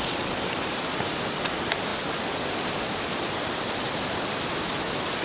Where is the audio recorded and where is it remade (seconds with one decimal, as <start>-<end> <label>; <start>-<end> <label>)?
0.0-1.9 remade; 1.9-5.2 recorded